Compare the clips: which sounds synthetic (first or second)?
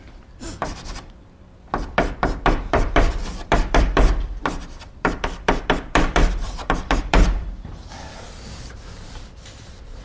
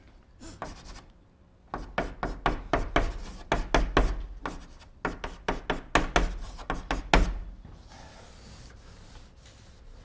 first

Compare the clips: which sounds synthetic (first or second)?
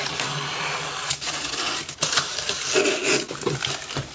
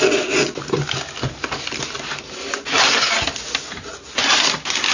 first